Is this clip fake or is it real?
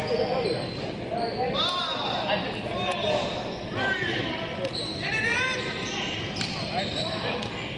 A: real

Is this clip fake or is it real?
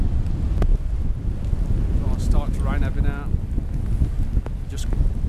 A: real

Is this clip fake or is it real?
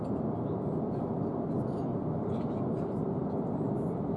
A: real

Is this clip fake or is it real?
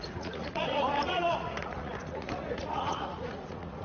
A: fake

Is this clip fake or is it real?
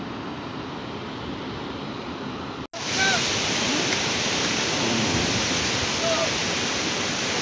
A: real